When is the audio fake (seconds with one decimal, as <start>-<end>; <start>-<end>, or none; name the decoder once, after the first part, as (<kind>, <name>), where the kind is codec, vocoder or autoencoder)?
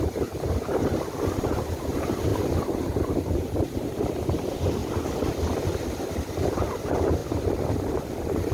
0.0-4.8 (vocoder, BigVGAN v2); 6.3-8.5